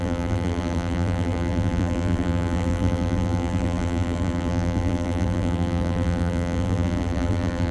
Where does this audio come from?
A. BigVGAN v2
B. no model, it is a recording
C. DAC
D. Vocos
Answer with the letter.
A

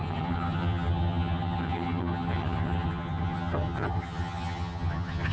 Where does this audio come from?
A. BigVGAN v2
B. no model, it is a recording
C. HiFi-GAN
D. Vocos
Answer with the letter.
C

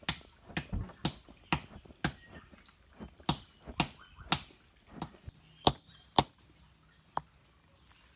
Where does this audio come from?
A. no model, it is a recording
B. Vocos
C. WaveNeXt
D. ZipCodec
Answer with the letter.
A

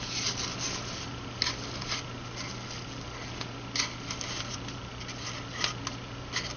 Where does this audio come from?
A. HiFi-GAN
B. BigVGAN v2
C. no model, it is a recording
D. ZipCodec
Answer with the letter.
C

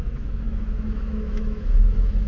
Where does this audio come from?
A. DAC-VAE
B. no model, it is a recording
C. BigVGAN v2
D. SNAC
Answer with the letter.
A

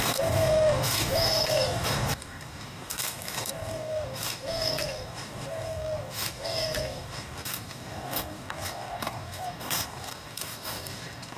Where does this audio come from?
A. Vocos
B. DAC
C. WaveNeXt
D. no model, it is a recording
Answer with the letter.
B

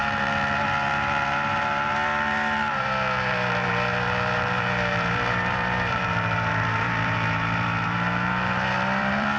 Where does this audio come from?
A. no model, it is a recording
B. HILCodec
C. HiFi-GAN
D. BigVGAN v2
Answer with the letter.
D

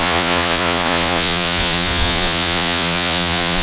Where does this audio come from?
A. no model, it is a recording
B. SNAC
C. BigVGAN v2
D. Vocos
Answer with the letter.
D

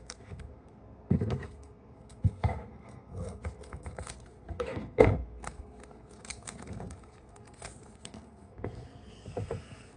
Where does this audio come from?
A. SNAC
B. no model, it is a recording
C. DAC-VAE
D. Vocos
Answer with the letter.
A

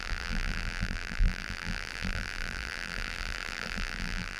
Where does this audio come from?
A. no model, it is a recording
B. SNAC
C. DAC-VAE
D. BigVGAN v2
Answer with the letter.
D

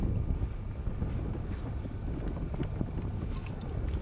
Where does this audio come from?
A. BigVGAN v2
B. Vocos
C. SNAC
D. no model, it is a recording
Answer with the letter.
D